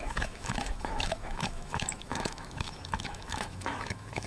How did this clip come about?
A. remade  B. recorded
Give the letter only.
A